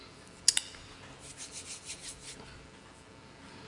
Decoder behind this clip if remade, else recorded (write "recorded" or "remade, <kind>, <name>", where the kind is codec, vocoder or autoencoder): recorded